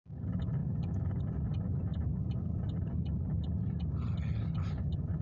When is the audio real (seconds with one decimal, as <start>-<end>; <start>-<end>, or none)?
0.0-0.6; 1.2-5.2